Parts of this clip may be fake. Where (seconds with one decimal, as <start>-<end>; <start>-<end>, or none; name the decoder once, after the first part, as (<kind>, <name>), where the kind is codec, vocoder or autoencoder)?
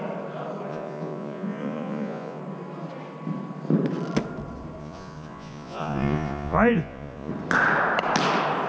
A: 0.7-2.4 (vocoder, Vocos); 4.8-7.3